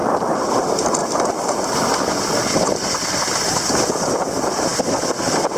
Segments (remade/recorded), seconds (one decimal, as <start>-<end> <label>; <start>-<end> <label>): 0.0-5.6 recorded

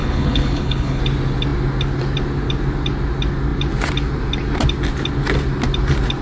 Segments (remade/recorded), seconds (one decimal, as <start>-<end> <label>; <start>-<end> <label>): 0.0-1.0 remade; 1.0-6.2 recorded

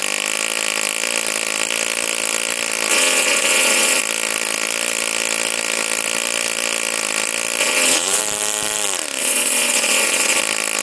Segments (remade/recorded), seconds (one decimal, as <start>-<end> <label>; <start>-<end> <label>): 0.0-2.9 recorded; 2.9-4.0 remade; 4.0-7.6 recorded; 7.6-8.2 remade; 8.2-9.2 recorded; 9.2-10.4 remade; 10.4-10.8 recorded